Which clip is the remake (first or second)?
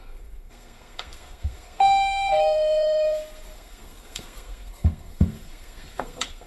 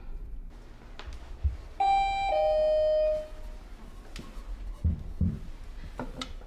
first